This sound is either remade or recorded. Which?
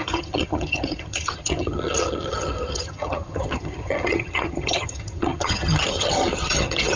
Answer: remade